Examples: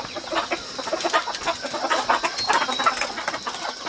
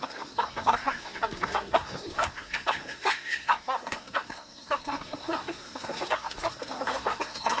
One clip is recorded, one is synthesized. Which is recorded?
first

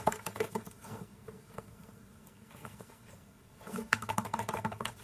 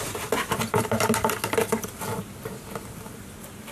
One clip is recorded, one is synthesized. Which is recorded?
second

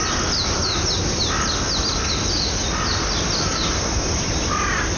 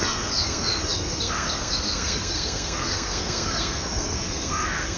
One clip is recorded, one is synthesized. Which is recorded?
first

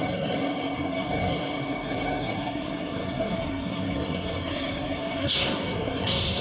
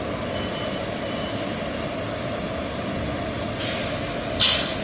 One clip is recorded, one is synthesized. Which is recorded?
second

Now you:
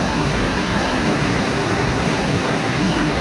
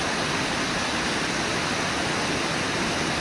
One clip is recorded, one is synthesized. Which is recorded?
second